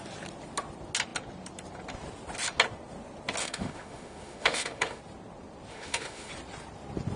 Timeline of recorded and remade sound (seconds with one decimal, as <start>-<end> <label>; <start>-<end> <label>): 0.0-3.4 recorded; 3.4-5.0 remade; 5.0-5.7 recorded; 5.7-6.3 remade; 6.3-7.2 recorded